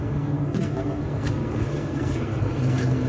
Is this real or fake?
fake